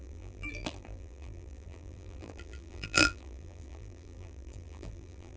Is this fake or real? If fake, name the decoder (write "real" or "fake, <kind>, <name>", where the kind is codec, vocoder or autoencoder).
fake, vocoder, BigVGAN v2